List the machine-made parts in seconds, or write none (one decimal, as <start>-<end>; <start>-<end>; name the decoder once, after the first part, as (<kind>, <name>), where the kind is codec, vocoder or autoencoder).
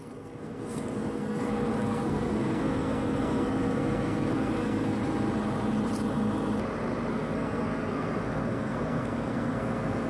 0.0-5.0 (codec, SNAC); 7.1-10.1